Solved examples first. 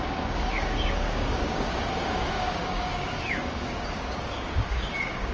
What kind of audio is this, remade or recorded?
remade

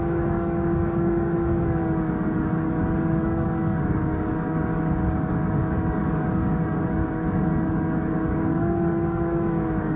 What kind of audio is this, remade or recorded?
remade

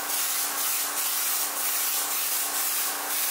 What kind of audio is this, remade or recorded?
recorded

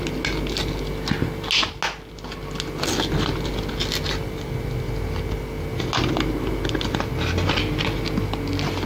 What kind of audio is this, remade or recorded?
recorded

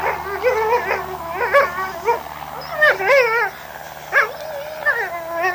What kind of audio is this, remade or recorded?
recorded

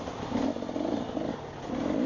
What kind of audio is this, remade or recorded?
recorded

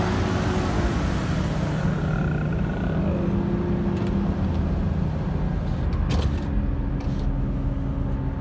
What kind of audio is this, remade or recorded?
recorded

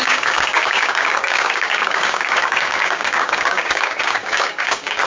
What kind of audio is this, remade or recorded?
remade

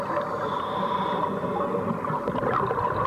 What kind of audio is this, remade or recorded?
recorded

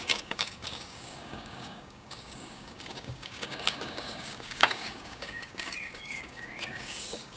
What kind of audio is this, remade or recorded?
remade